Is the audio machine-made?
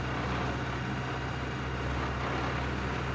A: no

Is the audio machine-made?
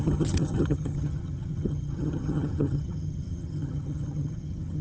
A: yes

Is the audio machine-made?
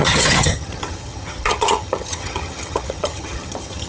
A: yes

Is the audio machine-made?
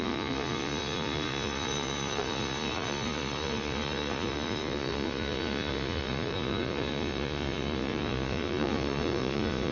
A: yes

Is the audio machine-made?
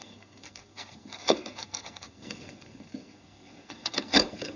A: yes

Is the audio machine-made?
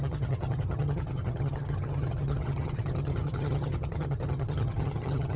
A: yes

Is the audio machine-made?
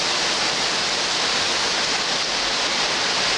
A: no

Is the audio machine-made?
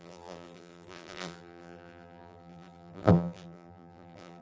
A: yes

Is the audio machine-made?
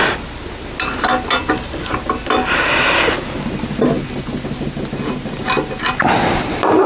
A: no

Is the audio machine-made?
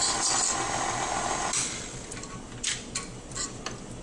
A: no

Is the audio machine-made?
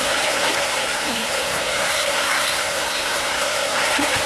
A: yes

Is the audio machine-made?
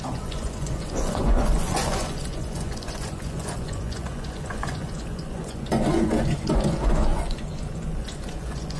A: yes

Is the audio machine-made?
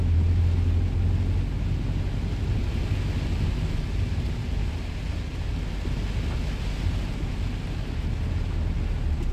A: no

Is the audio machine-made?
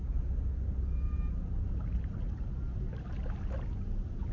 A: no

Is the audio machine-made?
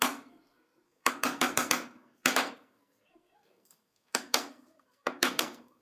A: yes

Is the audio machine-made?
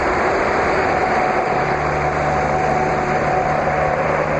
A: yes